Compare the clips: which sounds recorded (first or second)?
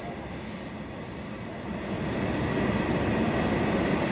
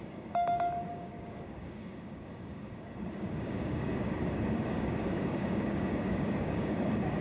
first